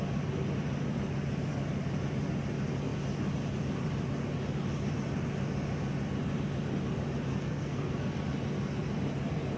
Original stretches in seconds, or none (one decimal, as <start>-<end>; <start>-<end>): 0.0-7.3; 8.2-9.6

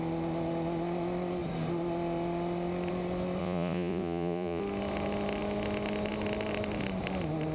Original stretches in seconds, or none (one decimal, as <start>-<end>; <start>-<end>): 0.0-3.4; 4.6-7.5

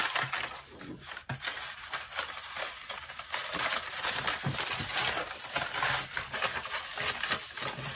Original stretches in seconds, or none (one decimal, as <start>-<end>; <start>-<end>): 0.0-7.9

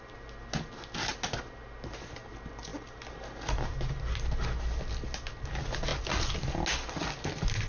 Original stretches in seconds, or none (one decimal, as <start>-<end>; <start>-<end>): 0.0-7.7

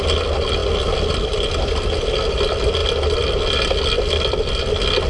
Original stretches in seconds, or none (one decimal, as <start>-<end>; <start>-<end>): 0.0-5.1

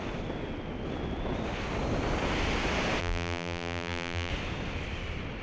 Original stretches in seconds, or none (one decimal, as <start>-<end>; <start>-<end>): 0.0-3.0; 4.3-5.4